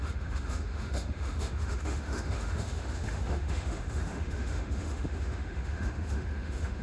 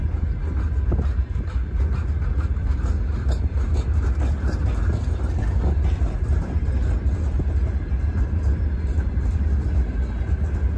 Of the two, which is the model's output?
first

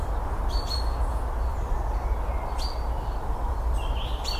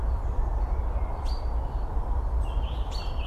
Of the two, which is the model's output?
second